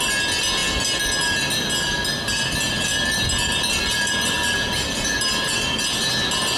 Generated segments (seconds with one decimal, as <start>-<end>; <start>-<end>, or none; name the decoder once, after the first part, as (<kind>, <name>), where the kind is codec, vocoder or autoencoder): 2.9-5.8 (vocoder, BigVGAN v2)